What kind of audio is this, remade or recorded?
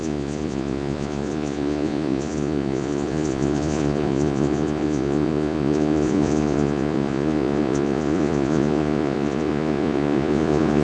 remade